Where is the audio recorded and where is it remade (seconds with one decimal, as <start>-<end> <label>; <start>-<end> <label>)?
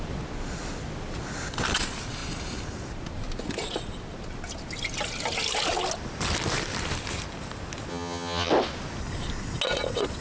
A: 0.0-7.9 recorded; 7.9-8.5 remade; 8.5-10.2 recorded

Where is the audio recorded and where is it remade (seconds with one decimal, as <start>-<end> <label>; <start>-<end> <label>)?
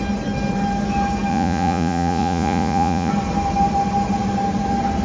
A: 0.0-1.3 recorded; 1.3-3.1 remade; 3.1-5.0 recorded